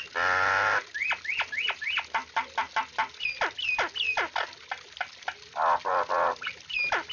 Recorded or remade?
recorded